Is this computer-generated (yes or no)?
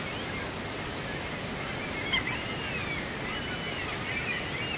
no